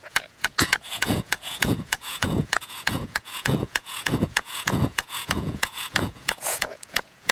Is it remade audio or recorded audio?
remade